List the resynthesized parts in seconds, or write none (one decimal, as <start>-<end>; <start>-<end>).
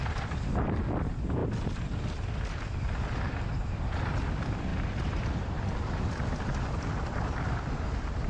0.0-1.4; 2.1-8.3